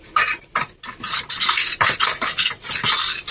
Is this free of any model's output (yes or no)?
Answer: yes